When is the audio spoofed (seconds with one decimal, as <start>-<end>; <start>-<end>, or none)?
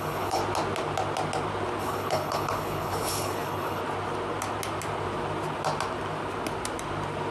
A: 0.0-0.4; 1.8-3.8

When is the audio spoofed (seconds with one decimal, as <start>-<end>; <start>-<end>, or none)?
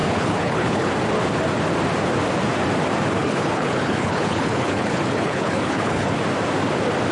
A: 0.0-0.9; 3.2-6.2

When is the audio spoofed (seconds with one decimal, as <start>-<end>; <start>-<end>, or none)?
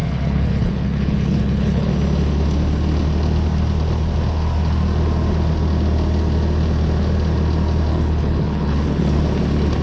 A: 0.0-1.9; 7.9-9.2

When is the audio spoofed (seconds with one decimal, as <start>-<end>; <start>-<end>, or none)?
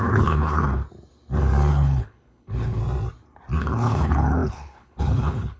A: 0.0-0.8; 1.7-2.8; 3.6-5.6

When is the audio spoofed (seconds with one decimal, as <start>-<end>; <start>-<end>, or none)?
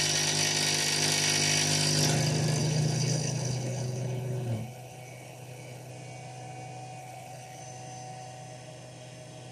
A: 2.6-5.9; 7.0-7.6